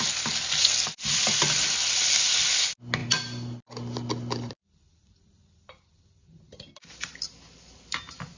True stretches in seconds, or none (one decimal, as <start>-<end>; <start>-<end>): 0.0-3.0; 7.1-8.4